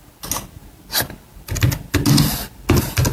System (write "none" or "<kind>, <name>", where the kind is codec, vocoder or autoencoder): none